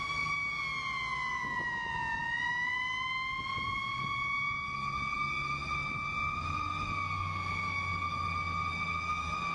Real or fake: real